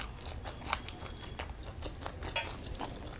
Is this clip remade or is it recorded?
recorded